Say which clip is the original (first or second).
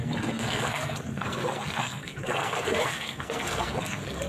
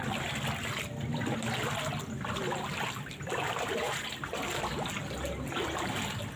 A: second